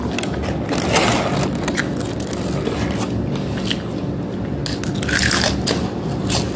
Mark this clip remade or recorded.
recorded